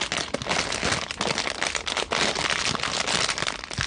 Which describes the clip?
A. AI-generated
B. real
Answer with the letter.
B